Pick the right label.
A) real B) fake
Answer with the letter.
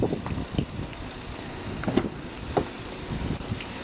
A